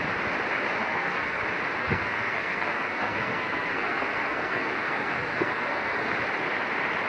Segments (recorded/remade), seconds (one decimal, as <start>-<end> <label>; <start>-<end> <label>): 0.0-0.8 recorded; 0.8-1.4 remade; 1.4-1.8 recorded; 1.8-6.1 remade; 6.1-7.1 recorded